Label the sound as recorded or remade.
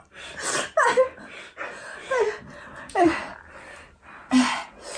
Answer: recorded